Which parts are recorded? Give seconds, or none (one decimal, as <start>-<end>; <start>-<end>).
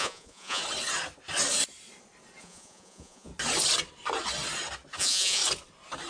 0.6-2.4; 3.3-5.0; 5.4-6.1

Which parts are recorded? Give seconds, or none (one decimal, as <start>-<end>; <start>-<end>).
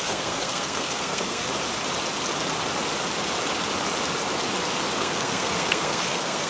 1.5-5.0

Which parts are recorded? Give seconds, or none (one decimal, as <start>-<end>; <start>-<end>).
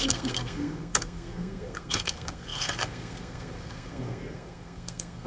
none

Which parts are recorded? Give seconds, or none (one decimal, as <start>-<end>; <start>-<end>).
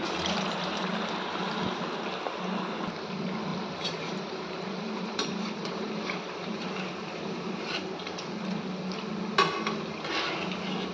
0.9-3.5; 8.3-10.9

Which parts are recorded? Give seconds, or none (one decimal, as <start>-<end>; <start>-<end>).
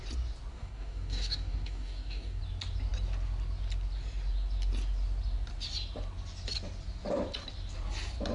0.0-0.5; 2.4-8.3